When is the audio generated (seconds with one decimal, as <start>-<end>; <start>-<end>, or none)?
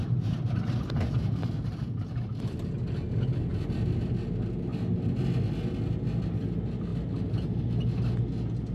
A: 0.0-1.4